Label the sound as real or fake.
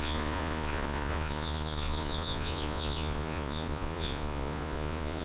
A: fake